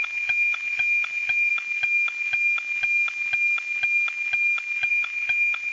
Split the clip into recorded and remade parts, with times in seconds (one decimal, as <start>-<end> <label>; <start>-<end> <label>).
0.0-5.7 recorded